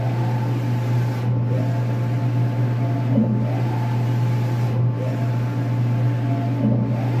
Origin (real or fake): real